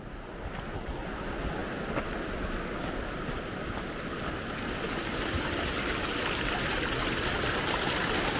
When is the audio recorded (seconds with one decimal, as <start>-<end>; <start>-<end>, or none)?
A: 0.0-8.4